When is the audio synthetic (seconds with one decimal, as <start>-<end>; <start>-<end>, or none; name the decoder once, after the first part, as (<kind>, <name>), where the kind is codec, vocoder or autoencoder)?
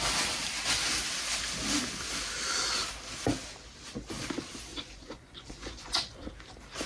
4.7-6.3 (vocoder, Vocos)